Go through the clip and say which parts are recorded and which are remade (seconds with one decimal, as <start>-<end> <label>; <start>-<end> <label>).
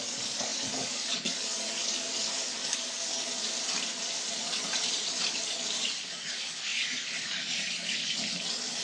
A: 0.0-3.4 remade; 3.4-4.4 recorded; 4.4-8.8 remade